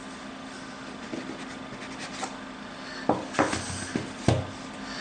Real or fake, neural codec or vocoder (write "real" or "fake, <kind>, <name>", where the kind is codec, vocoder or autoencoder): real